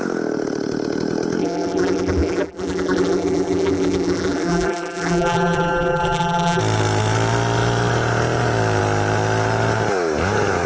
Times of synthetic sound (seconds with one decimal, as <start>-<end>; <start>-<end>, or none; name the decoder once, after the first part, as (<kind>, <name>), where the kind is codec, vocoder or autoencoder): 1.4-6.6 (vocoder, BigVGAN v2)